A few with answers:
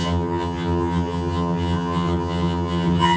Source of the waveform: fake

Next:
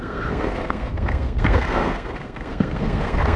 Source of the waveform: fake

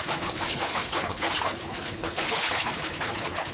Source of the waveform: fake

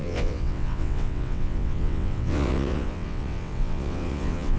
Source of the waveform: fake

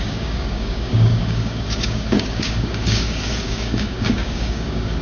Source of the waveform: fake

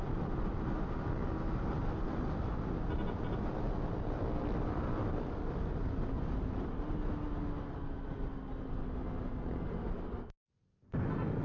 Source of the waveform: real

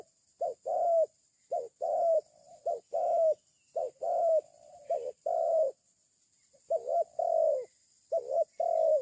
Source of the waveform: real